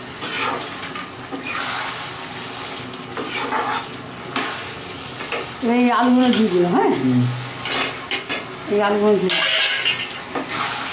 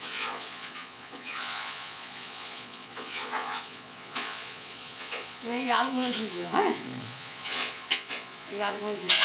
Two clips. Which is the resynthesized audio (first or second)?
second